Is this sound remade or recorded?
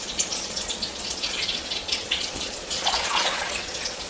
remade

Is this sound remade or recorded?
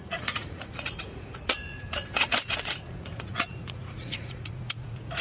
remade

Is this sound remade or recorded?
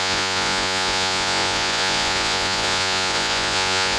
remade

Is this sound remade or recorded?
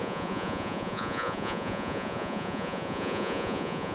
remade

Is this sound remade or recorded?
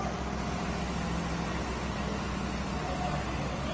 recorded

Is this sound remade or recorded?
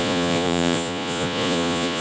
remade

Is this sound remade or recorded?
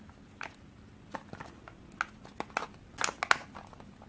recorded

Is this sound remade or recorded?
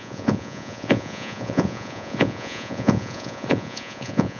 remade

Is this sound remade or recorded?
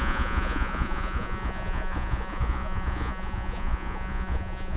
remade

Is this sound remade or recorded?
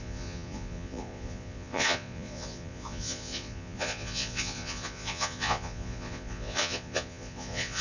remade